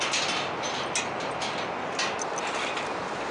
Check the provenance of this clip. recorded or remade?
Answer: recorded